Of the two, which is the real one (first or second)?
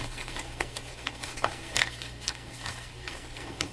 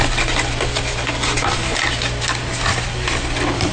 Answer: second